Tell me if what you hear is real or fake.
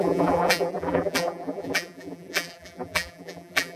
fake